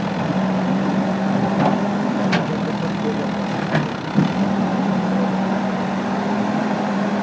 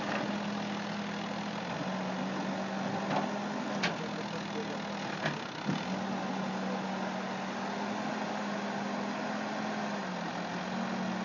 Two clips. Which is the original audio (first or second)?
second